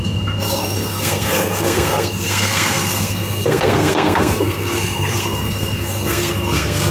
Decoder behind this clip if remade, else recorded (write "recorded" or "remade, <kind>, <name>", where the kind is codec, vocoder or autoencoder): remade, codec, SNAC